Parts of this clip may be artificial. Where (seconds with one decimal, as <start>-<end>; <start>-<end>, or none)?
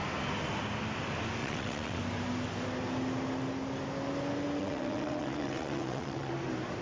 1.4-2.0; 4.6-6.3